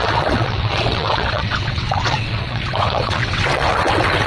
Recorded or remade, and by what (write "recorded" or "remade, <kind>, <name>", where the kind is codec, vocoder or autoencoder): remade, vocoder, WaveNeXt